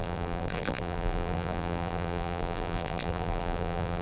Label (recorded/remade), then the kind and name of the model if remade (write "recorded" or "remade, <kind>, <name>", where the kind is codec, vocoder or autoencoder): remade, vocoder, BigVGAN v2